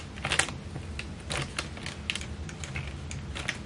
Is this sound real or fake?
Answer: real